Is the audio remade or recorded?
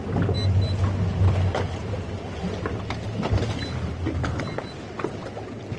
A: recorded